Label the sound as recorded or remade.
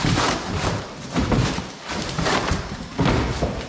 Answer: remade